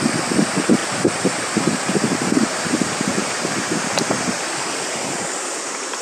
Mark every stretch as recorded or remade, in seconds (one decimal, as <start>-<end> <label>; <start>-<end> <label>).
0.0-0.8 recorded; 0.8-4.4 remade; 4.4-6.0 recorded